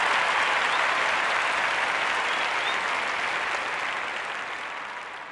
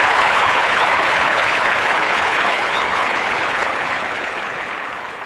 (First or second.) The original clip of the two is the first